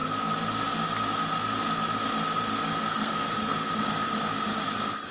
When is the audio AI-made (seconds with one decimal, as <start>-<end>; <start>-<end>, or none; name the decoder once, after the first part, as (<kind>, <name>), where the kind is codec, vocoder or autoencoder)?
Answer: 2.9-3.7 (codec, SNAC)